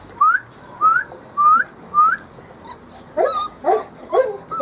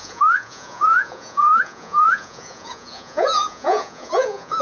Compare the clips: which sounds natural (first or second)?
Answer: first